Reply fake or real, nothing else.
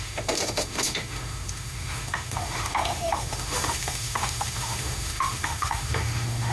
fake